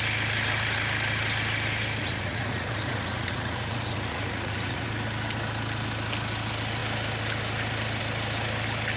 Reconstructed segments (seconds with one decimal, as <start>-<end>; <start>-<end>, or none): 2.0-4.9